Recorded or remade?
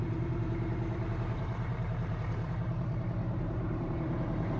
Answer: remade